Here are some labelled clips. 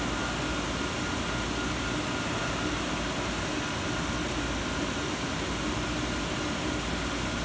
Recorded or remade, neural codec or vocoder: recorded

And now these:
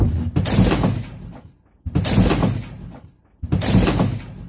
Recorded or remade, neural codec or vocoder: recorded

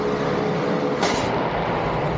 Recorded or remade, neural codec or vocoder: recorded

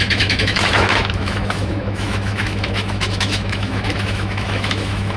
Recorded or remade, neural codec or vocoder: remade, autoencoder, DAC-VAE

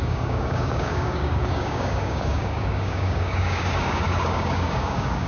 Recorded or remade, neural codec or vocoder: remade, codec, DAC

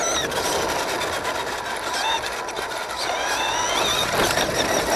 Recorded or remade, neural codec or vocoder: recorded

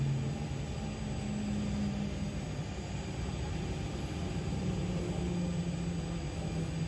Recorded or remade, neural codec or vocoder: recorded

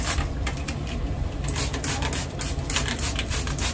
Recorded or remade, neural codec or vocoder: recorded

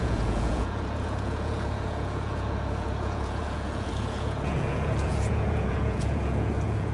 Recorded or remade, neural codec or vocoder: remade, vocoder, Vocos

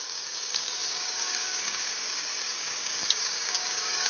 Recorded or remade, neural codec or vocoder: remade, codec, DAC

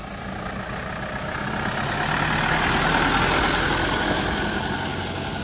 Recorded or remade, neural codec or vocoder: recorded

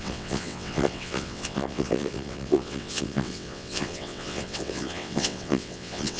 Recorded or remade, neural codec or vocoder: remade, vocoder, WaveNeXt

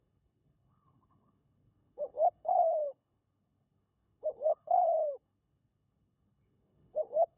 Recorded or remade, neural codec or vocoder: remade, codec, HILCodec